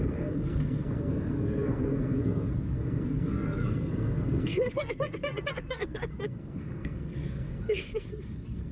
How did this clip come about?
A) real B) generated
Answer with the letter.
B